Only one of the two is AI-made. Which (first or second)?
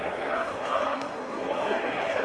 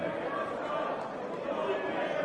first